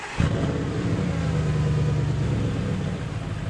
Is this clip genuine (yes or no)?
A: yes